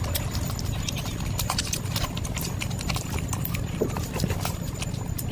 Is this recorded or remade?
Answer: recorded